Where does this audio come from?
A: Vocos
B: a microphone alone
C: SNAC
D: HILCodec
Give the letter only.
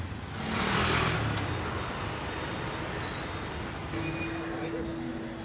B